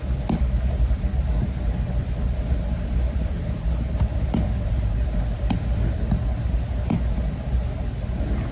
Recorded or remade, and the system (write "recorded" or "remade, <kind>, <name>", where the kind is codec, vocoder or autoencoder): recorded